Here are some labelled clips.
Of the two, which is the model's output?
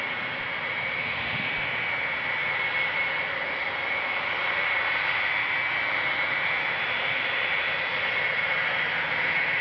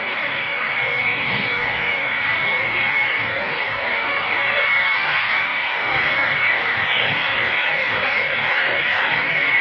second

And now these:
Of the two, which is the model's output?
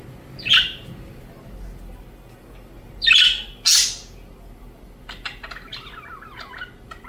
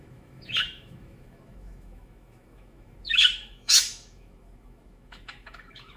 second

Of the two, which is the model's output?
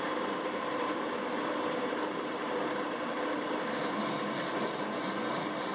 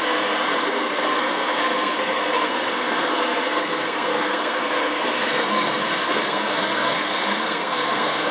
second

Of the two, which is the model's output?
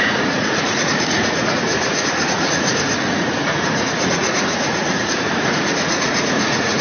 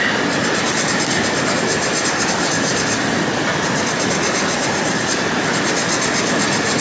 first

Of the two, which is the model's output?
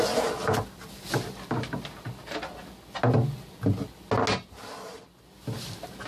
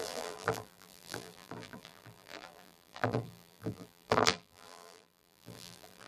second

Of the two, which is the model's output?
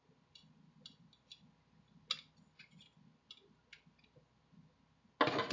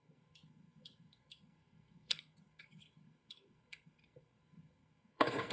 second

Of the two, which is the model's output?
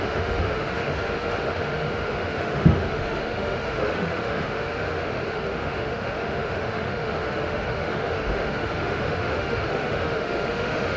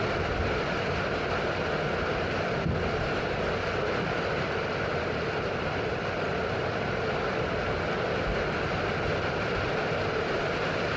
first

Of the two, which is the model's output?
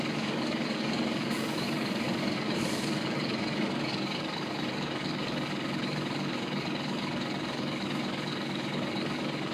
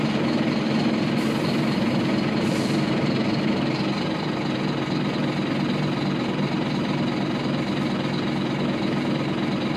first